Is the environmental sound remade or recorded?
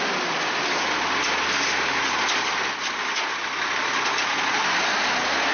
recorded